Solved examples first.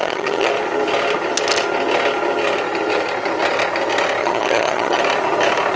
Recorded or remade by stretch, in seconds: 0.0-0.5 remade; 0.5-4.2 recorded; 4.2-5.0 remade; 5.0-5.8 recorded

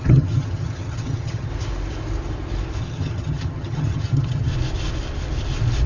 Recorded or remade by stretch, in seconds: 0.0-1.5 remade; 1.5-2.8 recorded; 2.8-4.5 remade; 4.5-5.9 recorded

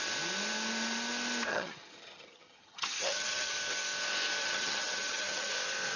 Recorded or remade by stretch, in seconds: 0.0-1.5 recorded; 1.5-3.5 remade; 3.5-4.4 recorded; 4.4-5.5 remade; 5.5-6.0 recorded

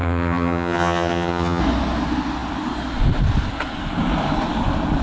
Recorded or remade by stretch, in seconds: 0.0-1.6 remade; 1.6-5.0 recorded

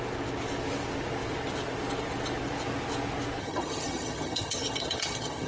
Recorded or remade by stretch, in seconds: 0.0-3.4 recorded; 3.4-5.5 remade